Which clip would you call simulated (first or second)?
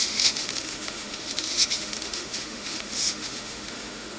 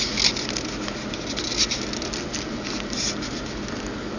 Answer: first